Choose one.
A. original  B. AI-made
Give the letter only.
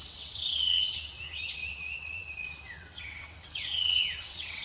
B